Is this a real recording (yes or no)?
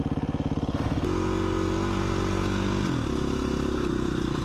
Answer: yes